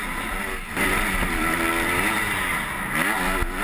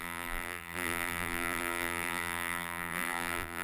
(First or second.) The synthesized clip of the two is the second